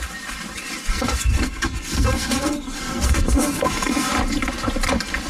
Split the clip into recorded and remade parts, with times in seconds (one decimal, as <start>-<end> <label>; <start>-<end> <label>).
0.0-0.9 recorded; 0.9-4.1 remade; 4.1-5.3 recorded